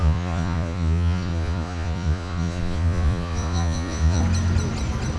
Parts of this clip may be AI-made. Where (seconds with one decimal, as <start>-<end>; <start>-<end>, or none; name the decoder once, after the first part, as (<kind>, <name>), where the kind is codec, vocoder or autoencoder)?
0.0-4.2 (vocoder, Vocos)